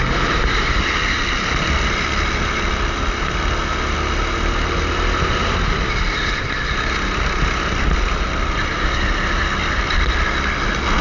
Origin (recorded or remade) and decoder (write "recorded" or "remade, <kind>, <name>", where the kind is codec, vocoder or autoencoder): recorded